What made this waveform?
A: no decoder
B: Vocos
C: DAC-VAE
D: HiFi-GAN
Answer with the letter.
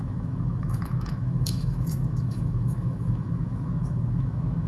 C